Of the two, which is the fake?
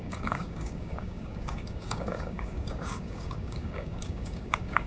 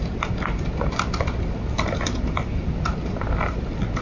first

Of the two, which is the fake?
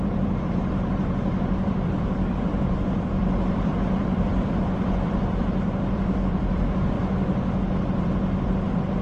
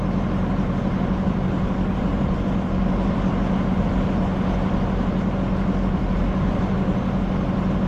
first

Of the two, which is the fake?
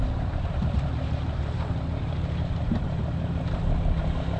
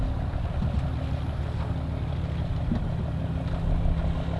first